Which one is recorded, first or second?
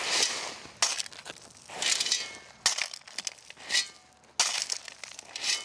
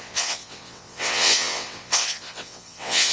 first